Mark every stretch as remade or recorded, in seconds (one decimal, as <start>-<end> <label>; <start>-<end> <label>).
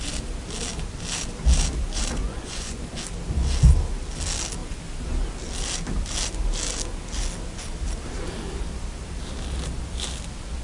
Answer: 0.0-2.2 recorded; 2.2-2.8 remade; 2.8-10.6 recorded